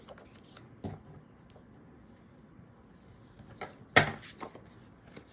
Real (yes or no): yes